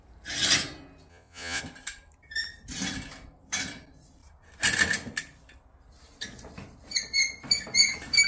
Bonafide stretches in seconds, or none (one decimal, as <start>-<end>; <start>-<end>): 0.0-1.1; 1.6-8.3